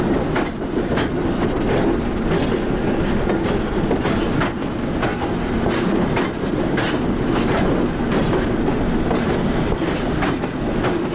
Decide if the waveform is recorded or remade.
recorded